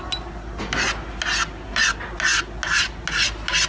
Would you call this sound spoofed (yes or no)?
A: no